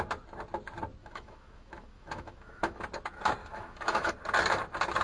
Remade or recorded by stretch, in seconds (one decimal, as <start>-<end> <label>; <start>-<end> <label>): 0.0-1.0 recorded; 1.0-2.8 remade; 2.8-3.4 recorded; 3.4-4.1 remade; 4.1-5.0 recorded